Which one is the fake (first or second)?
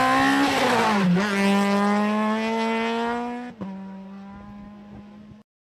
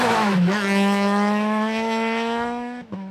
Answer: second